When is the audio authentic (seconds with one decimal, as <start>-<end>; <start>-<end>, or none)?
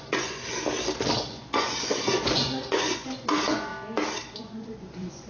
0.6-1.3; 3.7-4.4